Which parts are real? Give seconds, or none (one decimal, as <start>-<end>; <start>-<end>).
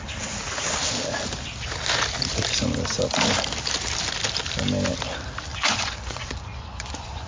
0.0-5.5